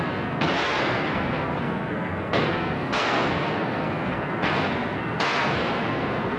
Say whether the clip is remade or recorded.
remade